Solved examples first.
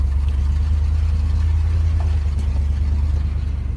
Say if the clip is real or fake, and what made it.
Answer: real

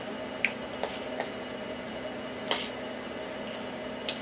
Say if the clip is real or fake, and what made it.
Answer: real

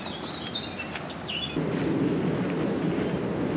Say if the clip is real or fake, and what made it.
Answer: real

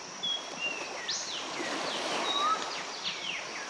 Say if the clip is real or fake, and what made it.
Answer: fake, vocoder, BigVGAN v2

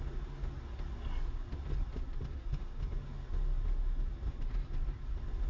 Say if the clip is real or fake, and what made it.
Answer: real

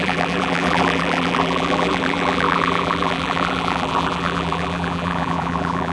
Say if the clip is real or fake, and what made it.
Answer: fake, vocoder, BigVGAN v2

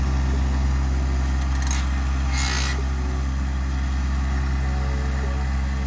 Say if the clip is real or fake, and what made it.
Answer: real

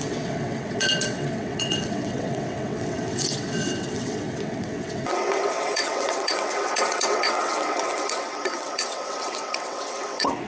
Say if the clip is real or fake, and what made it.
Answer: fake, vocoder, WaveNeXt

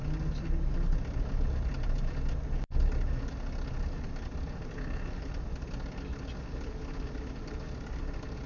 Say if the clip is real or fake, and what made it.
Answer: real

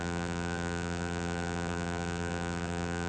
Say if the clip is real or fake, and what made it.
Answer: fake, vocoder, BigVGAN v2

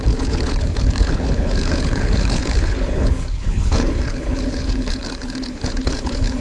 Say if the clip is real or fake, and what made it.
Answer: fake, codec, HILCodec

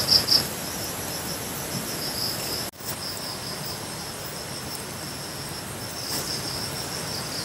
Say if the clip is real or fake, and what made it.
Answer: real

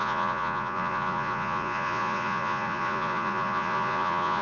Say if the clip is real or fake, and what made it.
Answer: fake, vocoder, Vocos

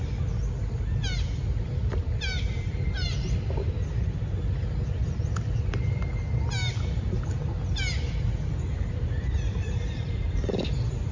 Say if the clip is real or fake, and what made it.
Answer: real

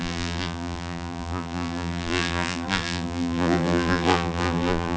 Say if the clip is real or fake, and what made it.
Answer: fake, vocoder, BigVGAN v2